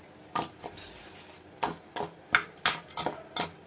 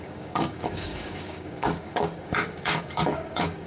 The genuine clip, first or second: first